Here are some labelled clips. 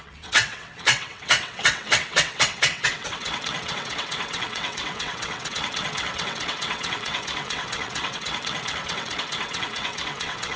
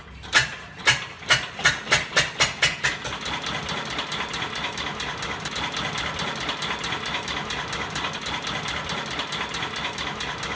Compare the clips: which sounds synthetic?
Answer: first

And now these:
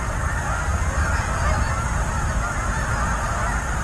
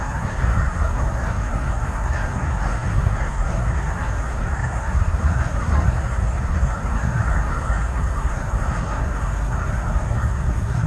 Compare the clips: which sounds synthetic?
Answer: second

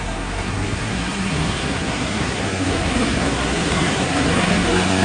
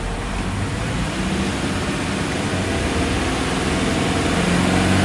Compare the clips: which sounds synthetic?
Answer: first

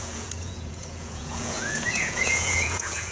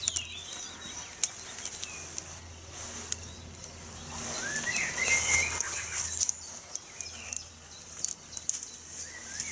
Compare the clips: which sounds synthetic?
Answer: first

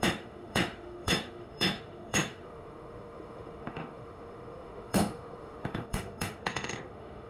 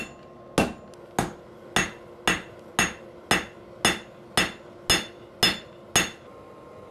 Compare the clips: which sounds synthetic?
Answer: first